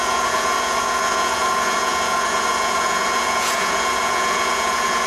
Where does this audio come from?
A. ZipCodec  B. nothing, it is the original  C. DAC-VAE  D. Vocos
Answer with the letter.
D